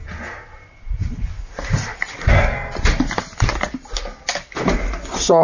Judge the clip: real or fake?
real